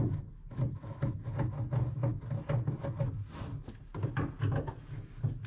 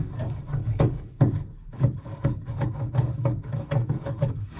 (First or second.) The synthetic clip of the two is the second